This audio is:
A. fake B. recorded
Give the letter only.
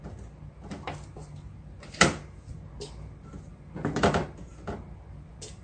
B